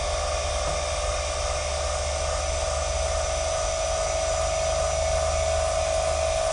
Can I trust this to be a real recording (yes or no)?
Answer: yes